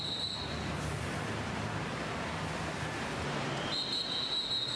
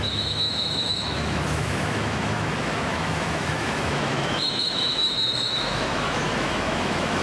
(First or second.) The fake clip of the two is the second